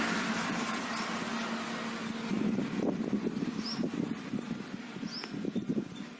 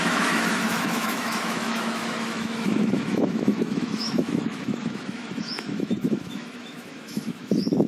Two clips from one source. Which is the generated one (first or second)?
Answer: second